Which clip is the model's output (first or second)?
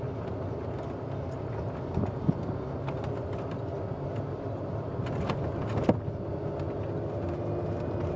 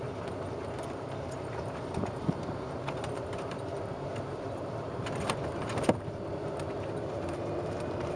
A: second